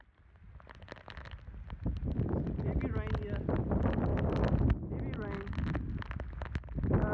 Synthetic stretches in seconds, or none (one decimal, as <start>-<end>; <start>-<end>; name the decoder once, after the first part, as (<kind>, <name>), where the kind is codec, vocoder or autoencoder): none